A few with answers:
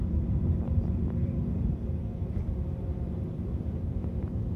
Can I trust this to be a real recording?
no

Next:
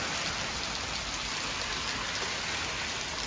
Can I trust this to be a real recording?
yes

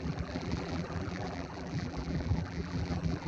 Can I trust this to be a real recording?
no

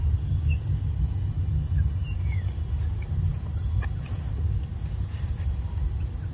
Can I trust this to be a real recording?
yes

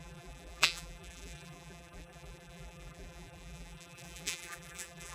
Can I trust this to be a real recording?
no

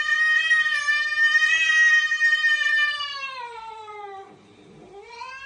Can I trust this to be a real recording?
no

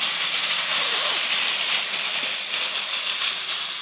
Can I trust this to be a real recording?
yes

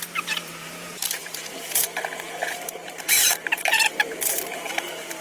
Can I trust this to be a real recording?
no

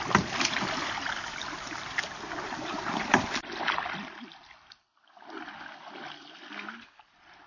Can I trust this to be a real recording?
no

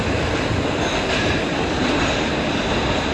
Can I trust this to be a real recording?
yes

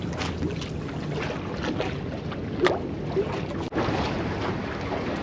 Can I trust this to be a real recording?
yes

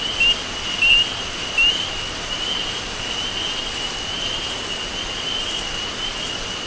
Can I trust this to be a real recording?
yes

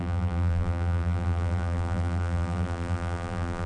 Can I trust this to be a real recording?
no